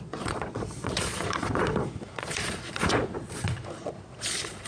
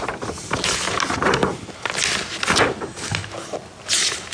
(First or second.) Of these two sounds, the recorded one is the second